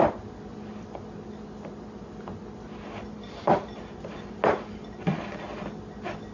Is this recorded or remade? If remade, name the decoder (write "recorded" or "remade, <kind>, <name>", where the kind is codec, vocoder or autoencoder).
recorded